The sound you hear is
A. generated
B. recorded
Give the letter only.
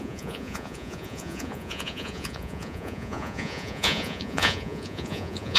A